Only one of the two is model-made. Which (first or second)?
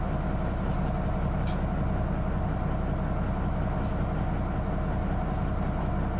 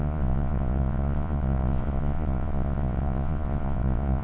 second